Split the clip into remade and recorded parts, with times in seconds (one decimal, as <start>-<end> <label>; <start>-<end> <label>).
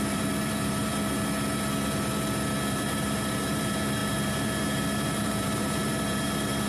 0.0-0.9 remade; 0.9-2.7 recorded; 2.7-6.7 remade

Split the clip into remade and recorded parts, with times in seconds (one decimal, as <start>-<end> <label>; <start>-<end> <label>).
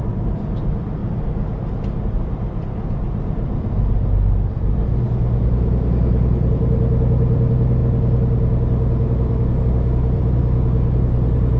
0.0-1.0 remade; 1.0-2.0 recorded; 2.0-7.8 remade; 7.8-9.6 recorded; 9.6-10.4 remade; 10.4-11.0 recorded; 11.0-11.6 remade